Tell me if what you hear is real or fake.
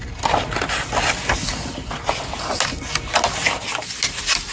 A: real